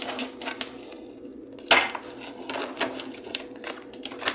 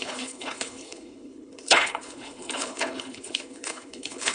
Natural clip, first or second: first